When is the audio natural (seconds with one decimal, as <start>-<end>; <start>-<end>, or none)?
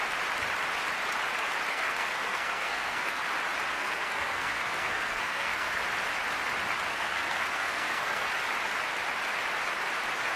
0.0-1.7; 3.2-3.7; 5.8-6.9; 8.3-10.4